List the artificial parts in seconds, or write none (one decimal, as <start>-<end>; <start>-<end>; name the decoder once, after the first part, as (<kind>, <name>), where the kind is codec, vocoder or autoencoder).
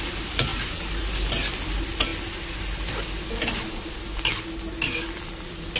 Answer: none